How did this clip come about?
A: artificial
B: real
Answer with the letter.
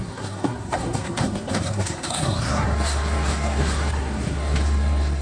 A